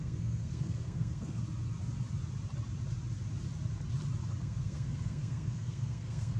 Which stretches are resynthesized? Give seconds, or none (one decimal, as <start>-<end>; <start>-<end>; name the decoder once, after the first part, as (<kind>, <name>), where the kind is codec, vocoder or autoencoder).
0.0-1.4 (codec, SNAC); 4.4-6.4